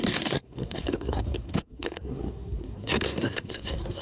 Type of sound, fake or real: fake